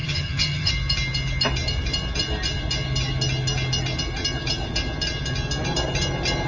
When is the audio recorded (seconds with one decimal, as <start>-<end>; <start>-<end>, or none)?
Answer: 0.7-6.5